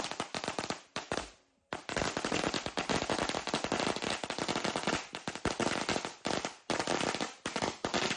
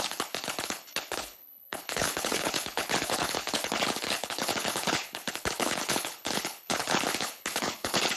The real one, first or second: first